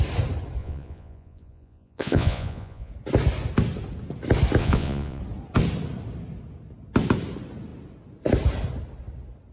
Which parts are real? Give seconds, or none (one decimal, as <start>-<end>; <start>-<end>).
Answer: 0.0-0.6; 2.9-4.6; 5.2-9.5

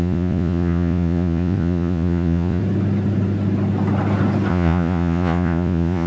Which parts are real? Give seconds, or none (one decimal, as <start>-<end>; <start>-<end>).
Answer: 2.6-4.5

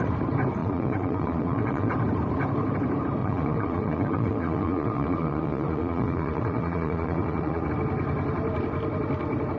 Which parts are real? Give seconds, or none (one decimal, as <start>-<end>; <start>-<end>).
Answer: 0.0-0.6; 1.9-3.2; 7.7-9.6

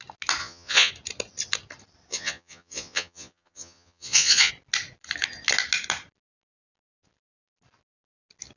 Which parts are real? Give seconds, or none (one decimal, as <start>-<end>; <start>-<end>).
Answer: 0.0-0.4; 0.9-2.1; 4.5-8.6

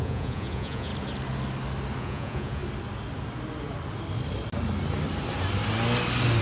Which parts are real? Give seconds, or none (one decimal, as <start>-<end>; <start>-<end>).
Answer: 0.9-2.0; 2.6-6.4

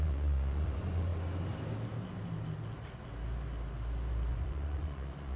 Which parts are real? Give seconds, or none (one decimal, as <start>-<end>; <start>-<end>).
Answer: 1.1-4.3

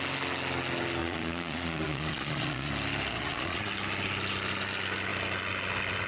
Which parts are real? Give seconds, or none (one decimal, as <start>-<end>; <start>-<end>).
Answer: 0.0-1.0; 2.7-3.1; 3.7-6.1

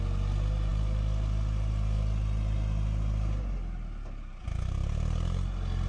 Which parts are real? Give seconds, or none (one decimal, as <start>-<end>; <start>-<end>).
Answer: 0.0-5.9